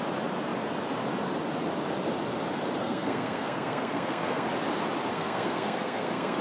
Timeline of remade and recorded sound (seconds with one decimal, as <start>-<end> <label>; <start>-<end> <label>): 0.0-2.8 recorded; 2.8-4.5 remade; 4.5-5.1 recorded; 5.1-6.4 remade